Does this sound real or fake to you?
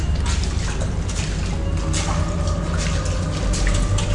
real